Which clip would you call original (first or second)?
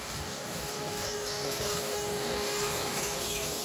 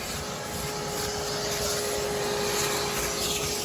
second